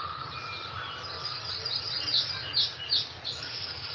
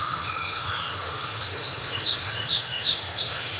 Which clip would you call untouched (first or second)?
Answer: first